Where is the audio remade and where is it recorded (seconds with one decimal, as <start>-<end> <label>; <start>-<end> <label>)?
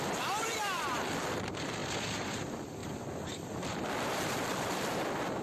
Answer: 0.0-5.4 remade